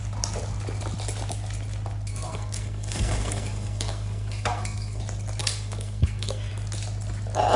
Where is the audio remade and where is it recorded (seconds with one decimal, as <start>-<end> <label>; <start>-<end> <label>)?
0.0-2.1 recorded; 2.1-5.0 remade; 5.0-5.4 recorded; 5.4-6.5 remade; 6.5-7.6 recorded